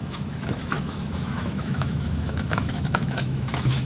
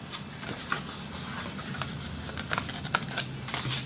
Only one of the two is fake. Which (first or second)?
first